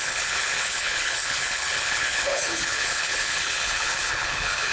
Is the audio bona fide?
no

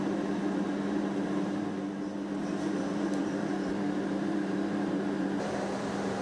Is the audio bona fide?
no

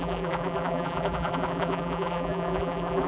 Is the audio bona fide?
no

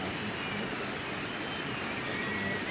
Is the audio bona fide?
yes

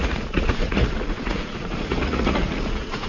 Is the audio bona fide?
no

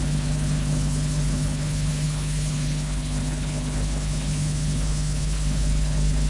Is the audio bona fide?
no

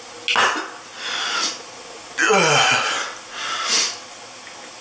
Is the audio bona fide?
yes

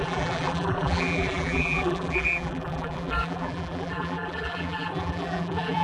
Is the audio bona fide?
no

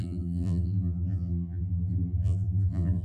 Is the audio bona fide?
no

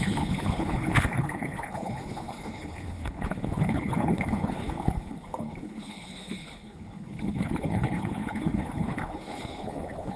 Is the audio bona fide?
no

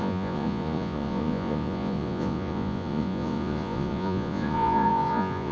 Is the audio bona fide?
no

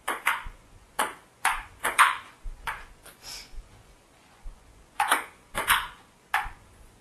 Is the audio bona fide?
no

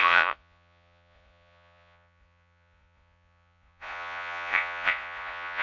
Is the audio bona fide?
no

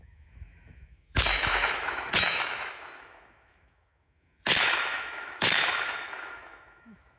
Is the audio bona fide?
no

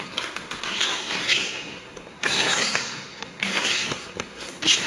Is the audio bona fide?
no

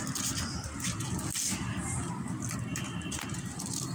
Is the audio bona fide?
yes